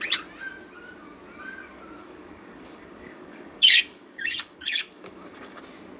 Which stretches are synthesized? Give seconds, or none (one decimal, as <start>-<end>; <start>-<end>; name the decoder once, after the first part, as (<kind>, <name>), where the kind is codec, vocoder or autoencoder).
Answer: 2.0-5.6 (codec, DAC)

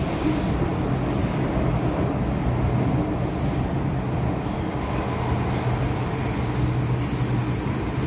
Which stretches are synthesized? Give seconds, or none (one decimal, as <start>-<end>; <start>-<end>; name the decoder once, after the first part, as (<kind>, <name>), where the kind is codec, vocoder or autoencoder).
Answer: none

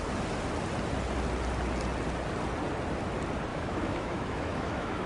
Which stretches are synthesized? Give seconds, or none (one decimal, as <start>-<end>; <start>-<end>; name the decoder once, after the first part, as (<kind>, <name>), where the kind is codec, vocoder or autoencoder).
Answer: 3.5-5.1 (autoencoder, DAC-VAE)

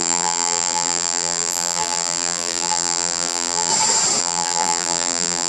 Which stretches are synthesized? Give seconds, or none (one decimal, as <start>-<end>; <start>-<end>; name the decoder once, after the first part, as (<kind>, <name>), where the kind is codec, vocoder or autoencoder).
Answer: 0.0-3.7 (vocoder, BigVGAN v2); 4.2-5.5

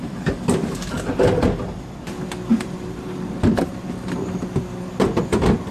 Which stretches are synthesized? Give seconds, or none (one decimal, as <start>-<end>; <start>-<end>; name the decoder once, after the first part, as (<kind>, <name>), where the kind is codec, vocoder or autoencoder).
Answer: 2.5-3.1 (vocoder, BigVGAN v2)

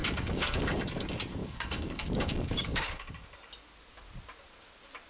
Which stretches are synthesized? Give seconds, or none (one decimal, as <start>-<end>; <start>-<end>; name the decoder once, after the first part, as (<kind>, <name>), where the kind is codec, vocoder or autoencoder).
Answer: 0.0-0.8 (codec, DAC); 1.4-3.1

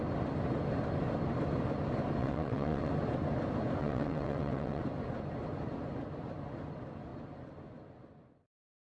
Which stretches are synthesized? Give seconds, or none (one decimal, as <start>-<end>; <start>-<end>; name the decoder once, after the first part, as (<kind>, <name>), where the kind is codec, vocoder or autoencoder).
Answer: 2.2-2.9 (vocoder, WaveNeXt); 3.8-4.8

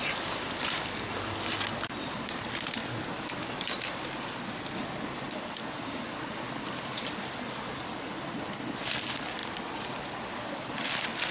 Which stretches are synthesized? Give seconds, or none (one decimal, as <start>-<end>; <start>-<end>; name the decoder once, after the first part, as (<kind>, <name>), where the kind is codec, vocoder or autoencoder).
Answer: none